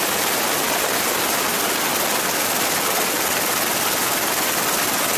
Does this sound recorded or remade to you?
recorded